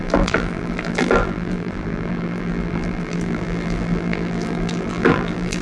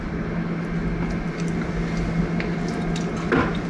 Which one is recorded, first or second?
second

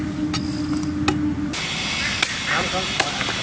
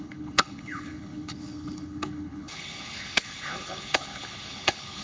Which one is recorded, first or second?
first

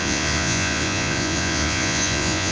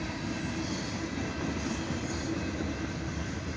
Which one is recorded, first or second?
second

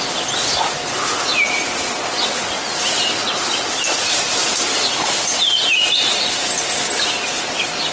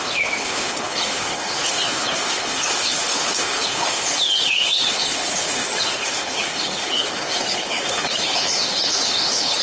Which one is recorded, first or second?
first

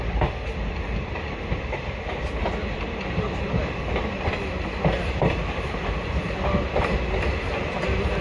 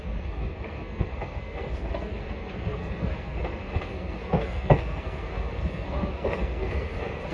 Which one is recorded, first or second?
first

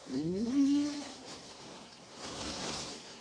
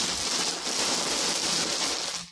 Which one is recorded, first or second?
second